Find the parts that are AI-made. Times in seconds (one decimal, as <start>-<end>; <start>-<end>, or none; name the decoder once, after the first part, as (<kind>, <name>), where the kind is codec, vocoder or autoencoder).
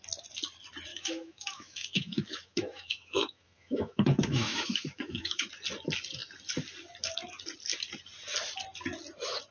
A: 0.9-5.5 (autoencoder, DAC-VAE)